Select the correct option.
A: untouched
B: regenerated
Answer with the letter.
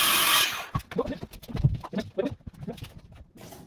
A